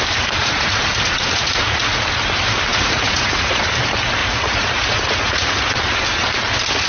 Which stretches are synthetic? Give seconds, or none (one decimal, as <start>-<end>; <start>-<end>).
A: 0.4-1.8; 2.7-3.6; 4.2-5.8